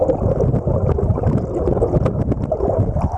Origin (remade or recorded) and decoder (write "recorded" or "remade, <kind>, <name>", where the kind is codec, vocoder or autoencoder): recorded